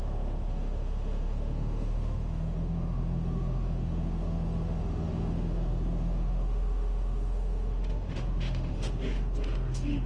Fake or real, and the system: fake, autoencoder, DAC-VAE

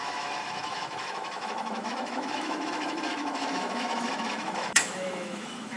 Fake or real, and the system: fake, autoencoder, DAC-VAE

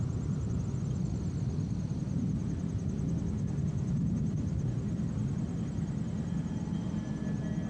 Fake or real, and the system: real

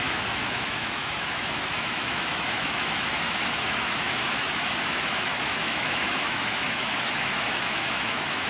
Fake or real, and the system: fake, autoencoder, DAC-VAE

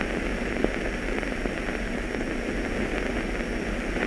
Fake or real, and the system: real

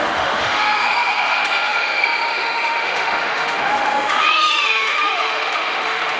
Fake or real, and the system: fake, autoencoder, DAC-VAE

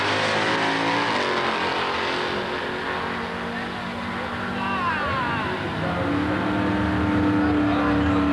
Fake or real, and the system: real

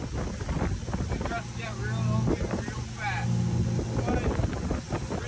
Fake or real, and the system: real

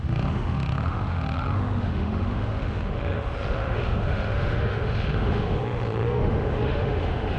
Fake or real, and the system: fake, autoencoder, DAC-VAE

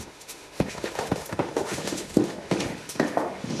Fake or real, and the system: fake, autoencoder, DAC-VAE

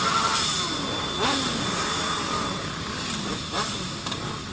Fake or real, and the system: real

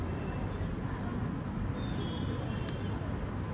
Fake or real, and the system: real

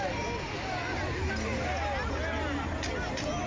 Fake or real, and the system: real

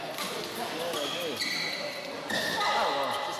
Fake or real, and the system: real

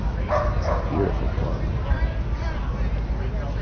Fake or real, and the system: real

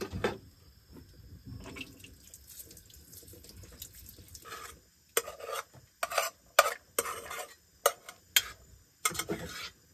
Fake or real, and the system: real